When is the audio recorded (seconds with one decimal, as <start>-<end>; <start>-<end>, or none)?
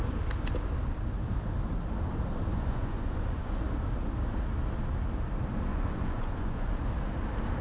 0.0-2.5; 3.6-5.7; 6.7-7.6